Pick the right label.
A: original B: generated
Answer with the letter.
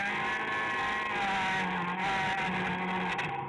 A